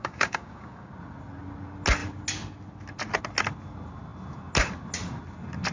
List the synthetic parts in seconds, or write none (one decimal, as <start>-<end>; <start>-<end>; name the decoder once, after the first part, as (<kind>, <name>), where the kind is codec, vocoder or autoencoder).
0.0-0.9 (codec, DAC)